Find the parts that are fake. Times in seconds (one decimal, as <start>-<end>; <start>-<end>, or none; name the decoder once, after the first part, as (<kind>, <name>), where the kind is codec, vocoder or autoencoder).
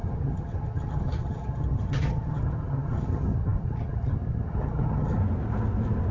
0.0-5.2 (vocoder, HiFi-GAN)